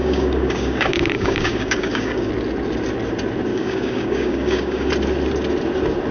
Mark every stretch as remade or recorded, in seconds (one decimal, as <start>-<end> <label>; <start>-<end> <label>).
0.0-2.3 remade; 2.3-3.5 recorded; 3.5-4.9 remade; 4.9-6.1 recorded